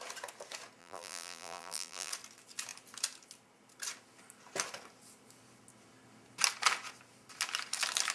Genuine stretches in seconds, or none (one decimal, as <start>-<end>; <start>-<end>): 0.0-0.8; 2.1-8.1